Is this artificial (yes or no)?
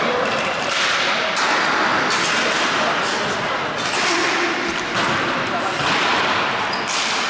no